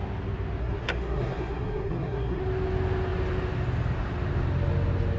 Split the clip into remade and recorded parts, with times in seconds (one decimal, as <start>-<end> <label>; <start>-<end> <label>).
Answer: 0.0-0.6 recorded; 0.6-2.4 remade; 2.4-5.2 recorded